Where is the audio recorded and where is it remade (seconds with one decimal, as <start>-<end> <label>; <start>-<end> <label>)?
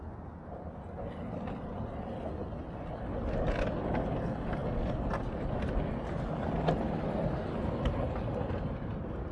0.0-9.3 recorded